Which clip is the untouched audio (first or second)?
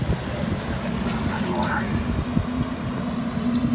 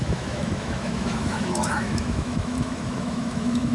first